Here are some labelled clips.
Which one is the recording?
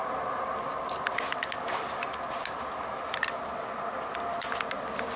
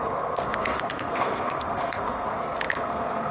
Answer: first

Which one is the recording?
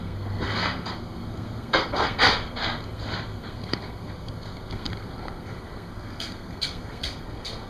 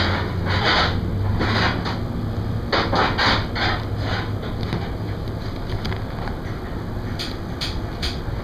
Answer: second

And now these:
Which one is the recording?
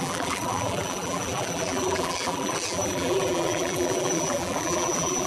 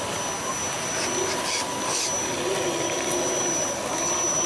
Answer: second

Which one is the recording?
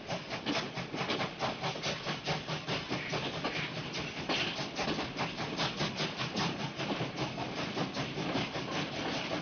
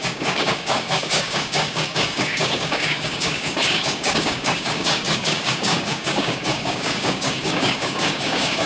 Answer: first